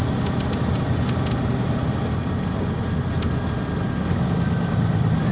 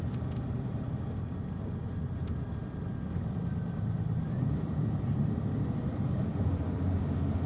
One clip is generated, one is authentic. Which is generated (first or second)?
second